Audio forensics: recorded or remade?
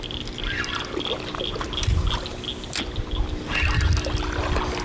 recorded